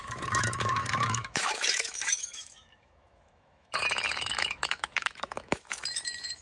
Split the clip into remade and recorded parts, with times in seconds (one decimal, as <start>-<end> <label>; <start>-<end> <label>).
0.0-6.4 remade